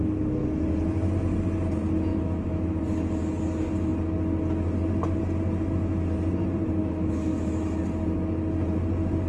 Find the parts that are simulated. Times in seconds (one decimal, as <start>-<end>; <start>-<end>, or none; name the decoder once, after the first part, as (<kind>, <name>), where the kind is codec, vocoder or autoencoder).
2.1-2.8 (autoencoder, DAC-VAE); 6.8-7.8